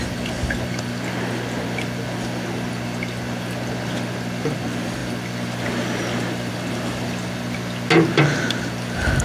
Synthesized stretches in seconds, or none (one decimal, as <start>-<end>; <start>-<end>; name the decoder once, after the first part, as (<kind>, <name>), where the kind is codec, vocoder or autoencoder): none